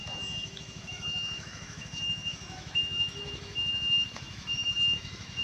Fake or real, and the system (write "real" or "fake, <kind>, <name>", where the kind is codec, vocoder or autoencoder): fake, autoencoder, DAC-VAE